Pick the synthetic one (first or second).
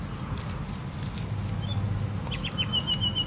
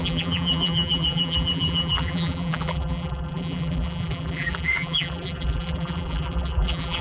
second